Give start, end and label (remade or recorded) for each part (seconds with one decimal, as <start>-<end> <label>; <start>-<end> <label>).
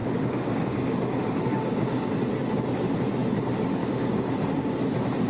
0.0-2.1 remade; 2.1-3.8 recorded; 3.8-4.3 remade; 4.3-5.3 recorded